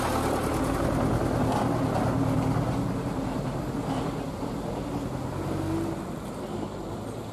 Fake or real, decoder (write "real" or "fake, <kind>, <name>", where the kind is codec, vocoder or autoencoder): real